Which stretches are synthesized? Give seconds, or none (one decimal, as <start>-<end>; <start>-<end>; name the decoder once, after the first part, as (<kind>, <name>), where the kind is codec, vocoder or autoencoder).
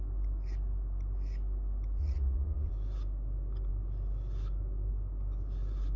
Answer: 2.0-2.7 (vocoder, Vocos)